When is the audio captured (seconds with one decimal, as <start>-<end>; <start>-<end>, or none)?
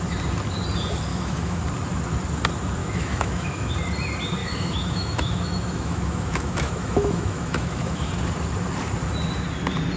0.0-1.1; 1.6-2.8; 3.7-4.4; 8.1-10.0